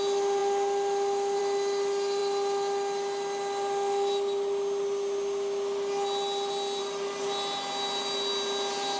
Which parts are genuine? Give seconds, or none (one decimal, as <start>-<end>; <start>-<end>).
0.0-9.0